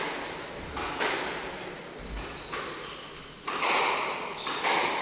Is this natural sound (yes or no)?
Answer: yes